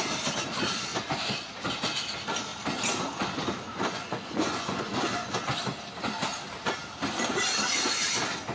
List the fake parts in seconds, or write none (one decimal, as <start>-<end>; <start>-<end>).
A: 0.9-1.5; 3.7-5.4